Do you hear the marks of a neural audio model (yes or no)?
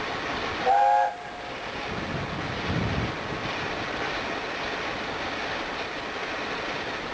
no